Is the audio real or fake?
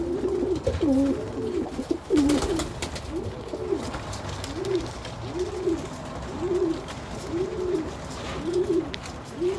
real